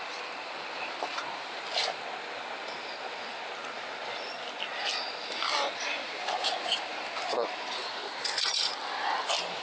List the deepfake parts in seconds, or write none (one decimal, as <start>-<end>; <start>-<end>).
none